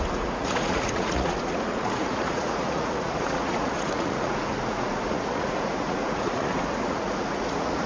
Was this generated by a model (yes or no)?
yes